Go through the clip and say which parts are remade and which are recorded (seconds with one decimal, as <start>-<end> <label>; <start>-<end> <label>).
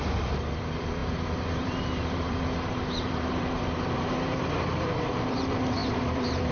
0.0-6.5 remade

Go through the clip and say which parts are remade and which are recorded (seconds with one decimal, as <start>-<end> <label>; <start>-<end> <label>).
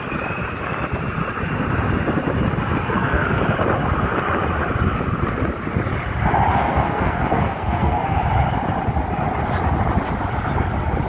0.0-2.8 recorded; 2.8-3.4 remade; 3.4-6.5 recorded; 6.5-8.2 remade; 8.2-11.1 recorded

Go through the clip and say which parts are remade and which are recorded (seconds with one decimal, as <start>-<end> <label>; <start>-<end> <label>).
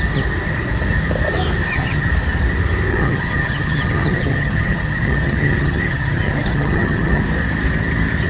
0.0-1.6 recorded; 1.6-2.1 remade; 2.1-2.9 recorded; 2.9-7.2 remade; 7.2-8.3 recorded